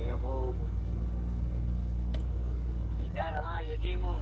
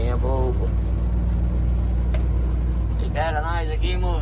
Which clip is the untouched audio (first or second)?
second